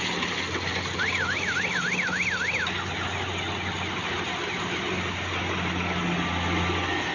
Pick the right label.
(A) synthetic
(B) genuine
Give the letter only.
B